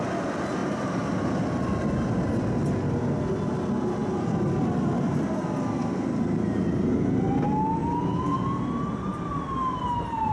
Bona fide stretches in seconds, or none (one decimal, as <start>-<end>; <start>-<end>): 0.0-0.6; 1.4-10.3

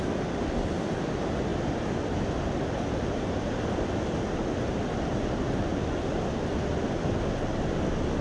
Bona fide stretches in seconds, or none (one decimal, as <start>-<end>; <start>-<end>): 0.0-8.2

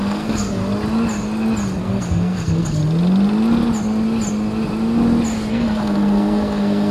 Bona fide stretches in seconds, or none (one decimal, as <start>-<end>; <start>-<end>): 0.6-1.8; 2.8-5.5

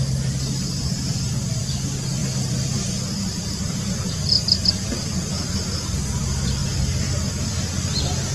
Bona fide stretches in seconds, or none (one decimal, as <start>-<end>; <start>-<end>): 0.0-2.2; 4.7-8.3